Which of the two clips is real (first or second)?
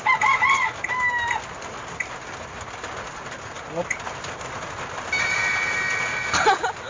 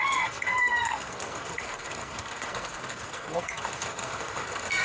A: first